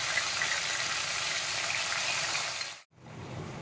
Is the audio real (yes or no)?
yes